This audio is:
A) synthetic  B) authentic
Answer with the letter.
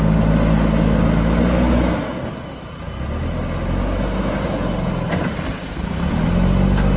B